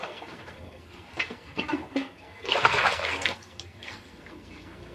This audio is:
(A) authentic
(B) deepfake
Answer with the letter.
B